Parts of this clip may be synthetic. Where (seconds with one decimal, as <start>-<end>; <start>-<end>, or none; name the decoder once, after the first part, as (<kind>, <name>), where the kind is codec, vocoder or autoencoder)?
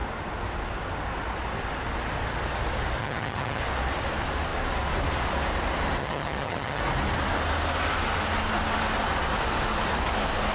3.0-3.6 (vocoder, HiFi-GAN); 6.0-6.8